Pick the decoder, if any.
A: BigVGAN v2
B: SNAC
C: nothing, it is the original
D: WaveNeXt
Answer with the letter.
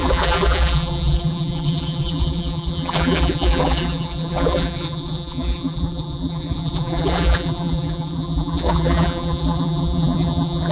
A